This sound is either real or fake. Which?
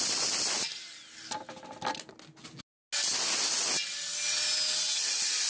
real